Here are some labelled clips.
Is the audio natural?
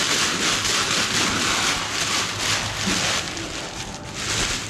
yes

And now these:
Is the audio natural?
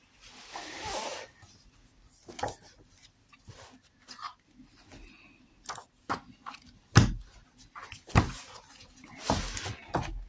yes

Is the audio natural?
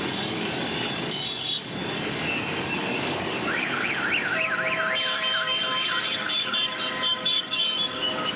no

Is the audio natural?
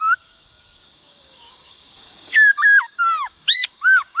no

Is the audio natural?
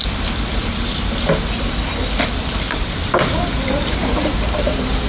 yes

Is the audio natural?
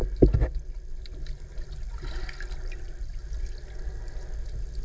yes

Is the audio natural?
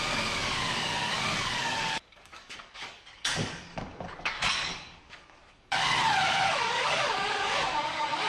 no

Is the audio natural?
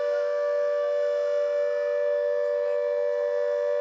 yes